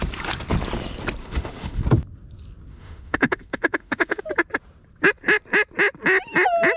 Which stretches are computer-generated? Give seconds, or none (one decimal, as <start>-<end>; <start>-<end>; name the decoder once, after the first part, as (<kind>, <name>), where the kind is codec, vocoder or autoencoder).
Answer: 1.2-1.8 (autoencoder, DAC-VAE); 2.7-4.2